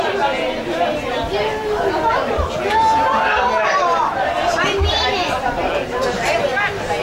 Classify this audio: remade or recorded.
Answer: recorded